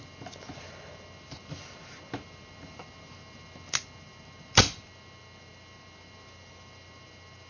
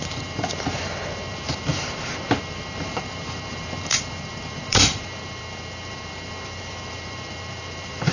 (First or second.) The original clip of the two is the first